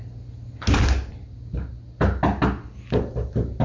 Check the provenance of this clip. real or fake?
real